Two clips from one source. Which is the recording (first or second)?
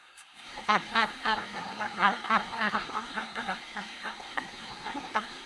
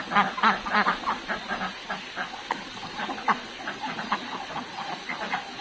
second